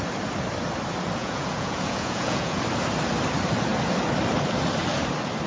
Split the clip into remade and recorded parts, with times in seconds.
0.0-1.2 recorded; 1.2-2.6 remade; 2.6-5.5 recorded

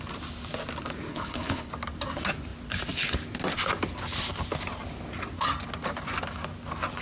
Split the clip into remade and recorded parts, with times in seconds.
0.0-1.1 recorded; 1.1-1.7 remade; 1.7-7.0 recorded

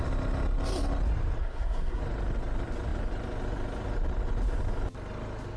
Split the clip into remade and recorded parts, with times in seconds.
0.0-1.4 recorded; 1.4-2.0 remade; 2.0-5.6 recorded

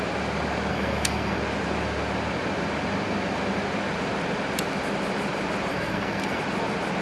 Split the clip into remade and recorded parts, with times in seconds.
0.0-0.7 recorded; 0.7-1.4 remade; 1.4-5.7 recorded; 5.7-6.4 remade; 6.4-7.0 recorded

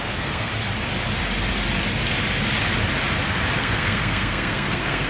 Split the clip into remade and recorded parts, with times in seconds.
0.0-0.5 remade; 0.5-3.6 recorded; 3.6-5.1 remade

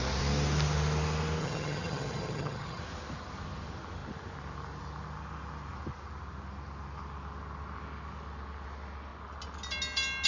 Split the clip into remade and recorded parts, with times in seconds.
0.0-1.4 recorded; 1.4-2.8 remade; 2.8-10.3 recorded

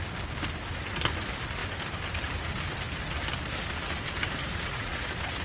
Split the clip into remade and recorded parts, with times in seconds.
0.0-4.4 recorded; 4.4-5.0 remade; 5.0-5.4 recorded

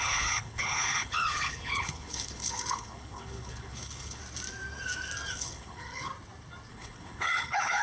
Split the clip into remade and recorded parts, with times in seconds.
0.0-4.2 remade; 4.2-5.3 recorded; 5.3-6.1 remade; 6.1-6.7 recorded; 6.7-7.8 remade